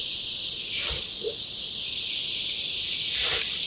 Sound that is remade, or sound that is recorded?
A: recorded